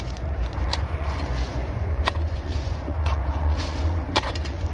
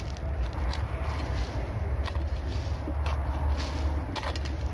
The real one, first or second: second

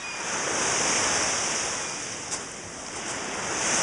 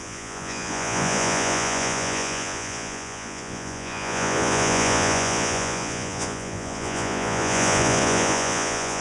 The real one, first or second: first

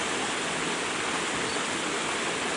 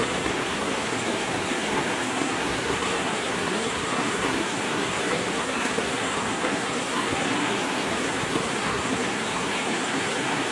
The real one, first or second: first